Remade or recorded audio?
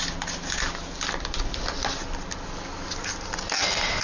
recorded